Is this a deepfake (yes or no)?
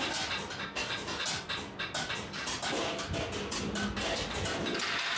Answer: no